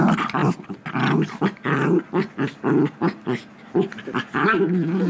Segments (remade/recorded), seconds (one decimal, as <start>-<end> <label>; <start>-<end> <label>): 0.0-5.1 recorded